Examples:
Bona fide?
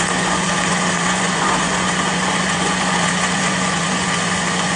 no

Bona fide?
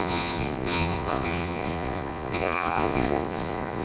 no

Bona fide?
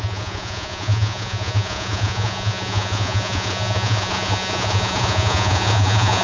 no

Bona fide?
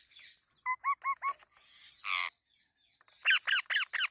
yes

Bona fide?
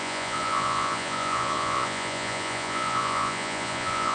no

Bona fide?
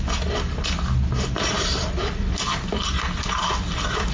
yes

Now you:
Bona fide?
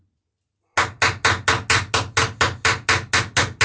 yes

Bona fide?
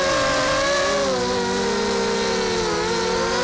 yes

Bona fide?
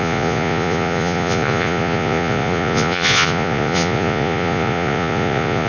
no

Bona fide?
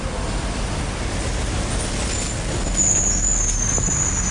yes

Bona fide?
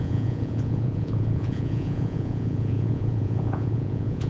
no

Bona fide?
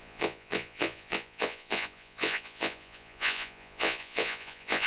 no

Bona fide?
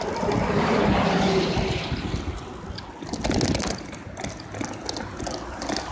yes